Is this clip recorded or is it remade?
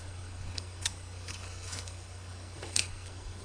remade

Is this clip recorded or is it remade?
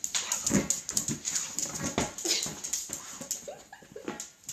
recorded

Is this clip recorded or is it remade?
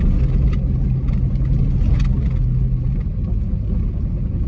recorded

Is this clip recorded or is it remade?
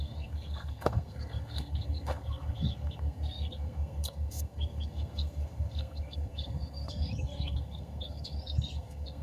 remade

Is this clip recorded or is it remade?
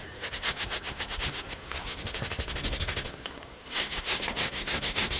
remade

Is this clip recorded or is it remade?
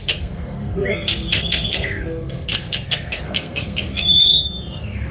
remade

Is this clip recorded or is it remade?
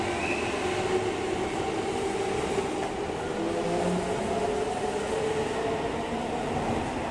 recorded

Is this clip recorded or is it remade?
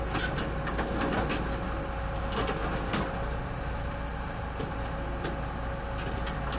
recorded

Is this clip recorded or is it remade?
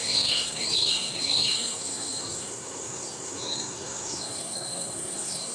remade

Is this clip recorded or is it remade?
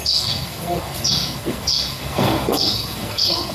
remade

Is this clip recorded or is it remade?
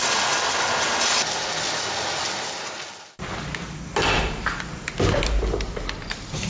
recorded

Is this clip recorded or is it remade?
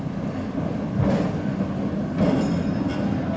recorded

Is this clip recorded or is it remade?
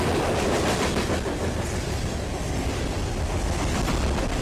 recorded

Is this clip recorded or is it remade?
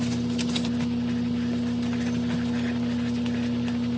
recorded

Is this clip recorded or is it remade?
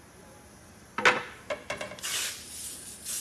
recorded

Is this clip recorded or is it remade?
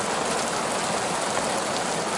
recorded